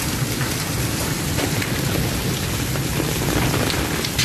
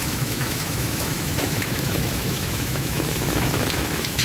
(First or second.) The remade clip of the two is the second